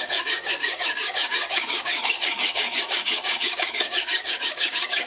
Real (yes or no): no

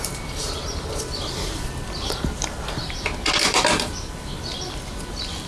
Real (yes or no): no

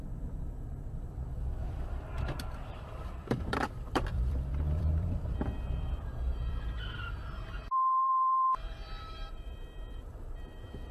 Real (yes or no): no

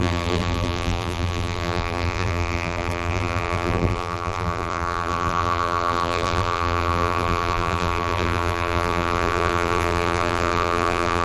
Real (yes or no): no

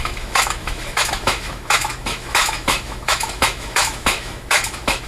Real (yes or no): no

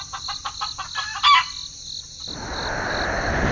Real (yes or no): yes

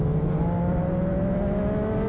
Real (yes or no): yes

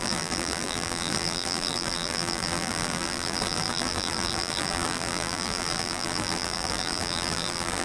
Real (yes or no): no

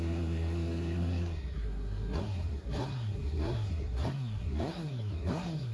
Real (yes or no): no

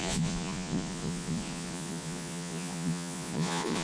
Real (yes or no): no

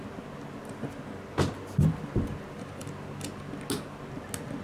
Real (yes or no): yes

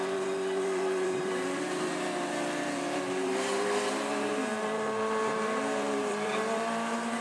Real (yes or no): no